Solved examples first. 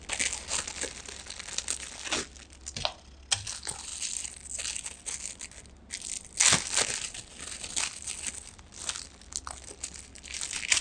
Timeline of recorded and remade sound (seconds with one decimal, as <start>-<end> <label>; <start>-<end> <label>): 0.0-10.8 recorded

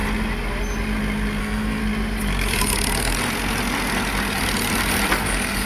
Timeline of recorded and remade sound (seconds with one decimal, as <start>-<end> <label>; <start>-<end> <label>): 0.0-1.4 recorded; 1.4-1.8 remade; 1.8-5.2 recorded; 5.2-5.7 remade

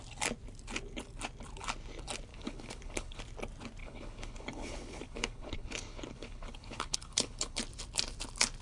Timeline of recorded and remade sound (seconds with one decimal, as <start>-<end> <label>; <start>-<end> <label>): 0.0-2.3 recorded; 2.3-3.2 remade; 3.2-3.8 recorded; 3.8-7.6 remade; 7.6-8.6 recorded

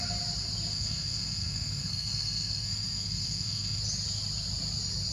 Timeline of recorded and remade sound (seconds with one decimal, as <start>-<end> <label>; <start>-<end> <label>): 0.0-0.7 recorded; 0.7-3.8 remade; 3.8-5.1 recorded

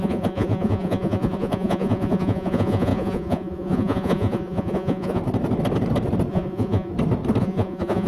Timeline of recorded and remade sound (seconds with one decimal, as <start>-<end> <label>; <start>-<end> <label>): 0.0-5.2 remade; 5.2-6.3 recorded; 6.3-6.9 remade; 6.9-7.4 recorded; 7.4-8.1 remade

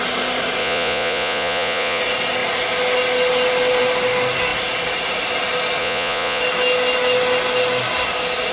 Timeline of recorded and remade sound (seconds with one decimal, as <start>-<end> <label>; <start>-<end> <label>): 0.0-0.6 recorded; 0.6-2.0 remade; 2.0-5.8 recorded; 5.8-6.4 remade; 6.4-8.5 recorded